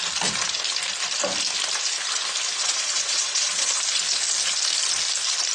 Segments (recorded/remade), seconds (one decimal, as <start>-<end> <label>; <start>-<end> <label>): 0.0-2.6 recorded; 2.6-3.7 remade; 3.7-5.5 recorded